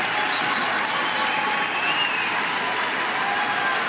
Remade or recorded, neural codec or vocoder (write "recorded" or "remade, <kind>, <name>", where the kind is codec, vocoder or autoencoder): recorded